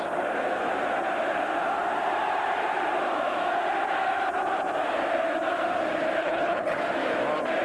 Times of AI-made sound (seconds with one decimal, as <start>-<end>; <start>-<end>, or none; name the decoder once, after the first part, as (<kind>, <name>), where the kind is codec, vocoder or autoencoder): 6.2-6.8 (codec, HILCodec)